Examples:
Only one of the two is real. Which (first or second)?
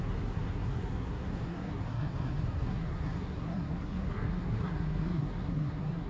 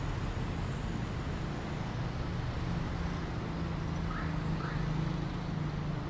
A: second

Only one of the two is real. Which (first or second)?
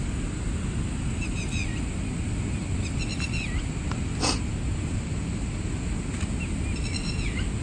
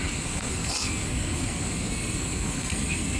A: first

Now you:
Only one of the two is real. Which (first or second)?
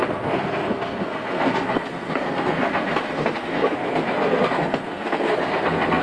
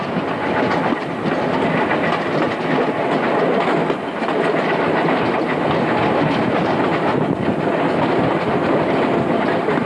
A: second